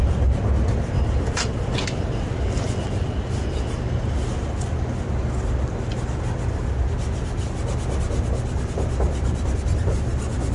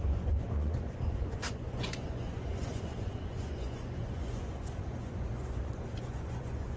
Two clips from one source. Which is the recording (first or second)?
first